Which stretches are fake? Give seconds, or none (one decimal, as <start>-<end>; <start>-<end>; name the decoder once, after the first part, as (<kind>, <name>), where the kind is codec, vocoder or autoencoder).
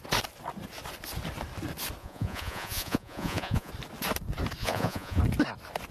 2.0-3.7 (vocoder, Vocos); 4.6-5.2